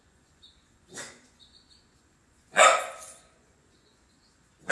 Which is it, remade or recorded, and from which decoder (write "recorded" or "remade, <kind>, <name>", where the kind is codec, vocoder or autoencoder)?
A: remade, vocoder, Vocos